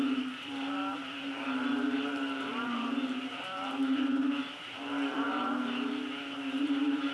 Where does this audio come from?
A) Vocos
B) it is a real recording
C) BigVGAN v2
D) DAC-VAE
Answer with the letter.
C